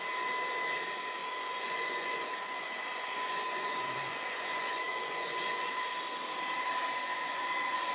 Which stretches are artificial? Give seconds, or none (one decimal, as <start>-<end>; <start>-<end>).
1.2-5.9; 7.1-7.9